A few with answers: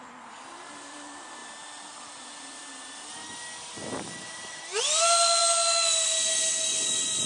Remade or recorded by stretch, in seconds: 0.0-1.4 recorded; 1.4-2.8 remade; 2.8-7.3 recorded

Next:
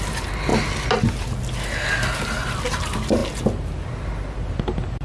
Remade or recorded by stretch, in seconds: 0.0-5.0 recorded

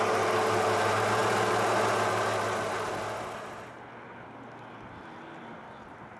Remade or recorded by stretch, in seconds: 0.0-6.2 recorded

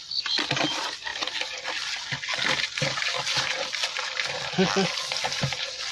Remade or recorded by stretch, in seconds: 0.0-5.9 recorded

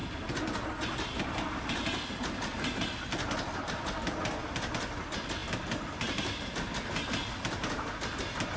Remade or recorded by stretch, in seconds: 0.0-2.5 recorded; 2.5-4.2 remade; 4.2-5.4 recorded; 5.4-6.0 remade; 6.0-8.6 recorded

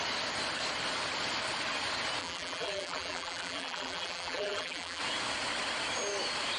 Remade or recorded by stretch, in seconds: 0.0-2.2 recorded; 2.2-5.0 remade; 5.0-6.6 recorded

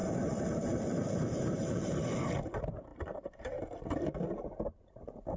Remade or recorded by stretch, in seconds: 0.0-1.9 remade; 1.9-2.9 recorded; 2.9-3.6 remade; 3.6-5.4 recorded

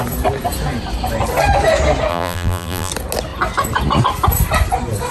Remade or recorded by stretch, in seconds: 0.0-2.1 recorded; 2.1-2.9 remade; 2.9-5.1 recorded